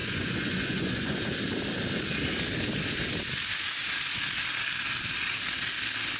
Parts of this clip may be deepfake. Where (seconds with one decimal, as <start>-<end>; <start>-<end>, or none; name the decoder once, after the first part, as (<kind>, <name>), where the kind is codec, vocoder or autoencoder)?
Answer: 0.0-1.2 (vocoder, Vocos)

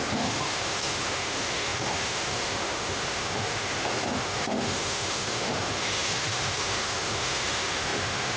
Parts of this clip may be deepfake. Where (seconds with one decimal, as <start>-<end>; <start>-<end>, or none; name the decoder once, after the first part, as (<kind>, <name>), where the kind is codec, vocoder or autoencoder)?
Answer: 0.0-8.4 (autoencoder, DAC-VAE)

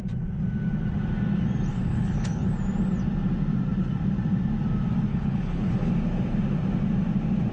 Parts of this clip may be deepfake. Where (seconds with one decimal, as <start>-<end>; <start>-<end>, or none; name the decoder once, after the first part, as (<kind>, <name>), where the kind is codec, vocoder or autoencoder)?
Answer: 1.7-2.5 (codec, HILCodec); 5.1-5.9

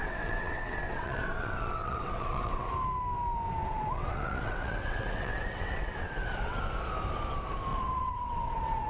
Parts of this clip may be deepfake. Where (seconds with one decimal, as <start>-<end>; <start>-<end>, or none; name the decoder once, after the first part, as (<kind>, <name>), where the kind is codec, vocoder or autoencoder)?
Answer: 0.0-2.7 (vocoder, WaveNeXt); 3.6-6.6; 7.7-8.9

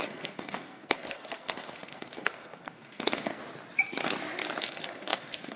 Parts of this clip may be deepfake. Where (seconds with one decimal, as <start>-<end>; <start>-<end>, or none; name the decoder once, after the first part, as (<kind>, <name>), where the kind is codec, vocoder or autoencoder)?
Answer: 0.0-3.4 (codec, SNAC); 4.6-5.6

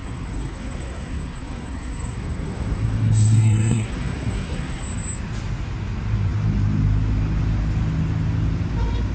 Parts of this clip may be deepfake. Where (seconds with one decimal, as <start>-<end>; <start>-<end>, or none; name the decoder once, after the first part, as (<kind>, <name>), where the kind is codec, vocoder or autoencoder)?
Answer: 0.0-4.8 (codec, SNAC)

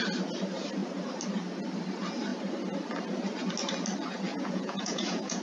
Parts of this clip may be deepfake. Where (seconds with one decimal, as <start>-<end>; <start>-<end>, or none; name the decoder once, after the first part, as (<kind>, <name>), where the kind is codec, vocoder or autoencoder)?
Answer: 4.3-5.4 (vocoder, Vocos)